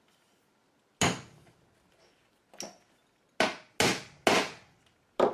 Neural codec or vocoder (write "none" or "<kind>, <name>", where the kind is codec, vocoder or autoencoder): none